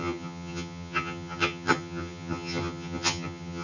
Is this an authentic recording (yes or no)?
no